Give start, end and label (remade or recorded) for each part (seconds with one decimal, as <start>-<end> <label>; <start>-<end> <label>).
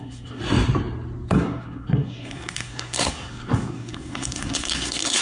0.0-0.4 remade; 0.4-1.3 recorded; 1.3-5.2 remade